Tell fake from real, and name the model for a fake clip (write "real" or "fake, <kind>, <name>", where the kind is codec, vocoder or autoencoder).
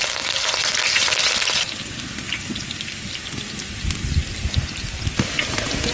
real